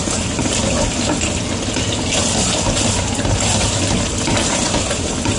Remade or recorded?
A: recorded